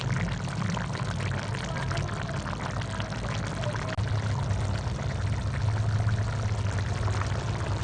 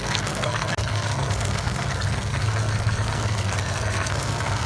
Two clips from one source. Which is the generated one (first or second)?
second